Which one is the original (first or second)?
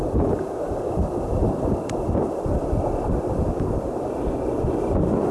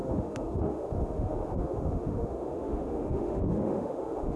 first